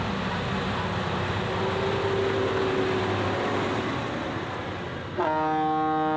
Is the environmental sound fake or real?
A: real